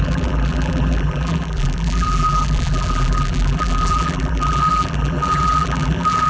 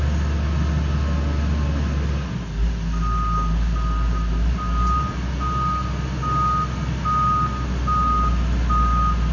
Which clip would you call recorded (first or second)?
second